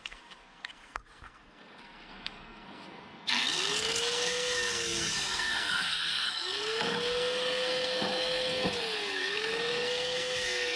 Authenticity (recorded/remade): remade